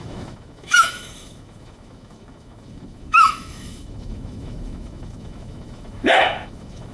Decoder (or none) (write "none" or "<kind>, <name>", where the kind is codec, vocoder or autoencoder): autoencoder, DAC-VAE